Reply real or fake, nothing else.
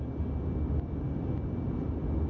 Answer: real